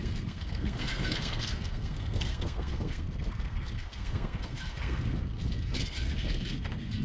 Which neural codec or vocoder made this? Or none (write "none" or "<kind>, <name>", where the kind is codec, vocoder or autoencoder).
codec, SNAC